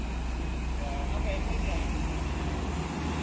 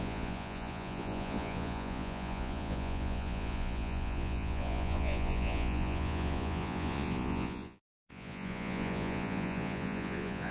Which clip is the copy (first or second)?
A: second